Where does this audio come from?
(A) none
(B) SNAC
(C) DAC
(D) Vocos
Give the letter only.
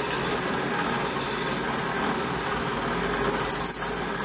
A